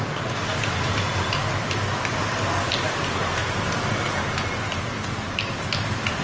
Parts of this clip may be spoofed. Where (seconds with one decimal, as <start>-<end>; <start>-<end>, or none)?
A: none